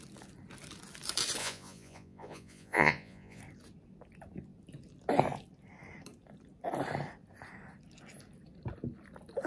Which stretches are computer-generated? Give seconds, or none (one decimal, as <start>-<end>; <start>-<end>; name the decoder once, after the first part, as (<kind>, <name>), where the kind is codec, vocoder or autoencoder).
1.4-3.4 (vocoder, Vocos)